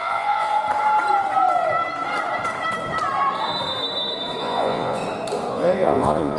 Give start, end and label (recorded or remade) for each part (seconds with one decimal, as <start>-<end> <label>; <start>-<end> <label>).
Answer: 0.0-0.6 remade; 0.6-4.4 recorded; 4.4-5.0 remade; 5.0-5.5 recorded; 5.5-6.4 remade